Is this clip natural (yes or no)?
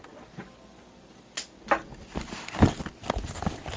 yes